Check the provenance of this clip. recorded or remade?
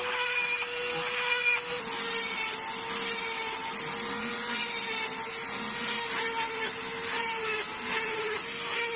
recorded